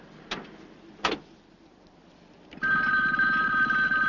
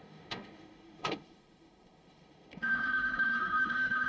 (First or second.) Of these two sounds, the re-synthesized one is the second